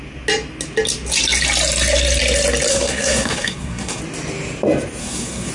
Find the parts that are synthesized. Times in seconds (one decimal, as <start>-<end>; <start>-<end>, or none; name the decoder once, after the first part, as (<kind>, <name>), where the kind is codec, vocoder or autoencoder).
2.7-4.0 (codec, SNAC); 5.0-5.5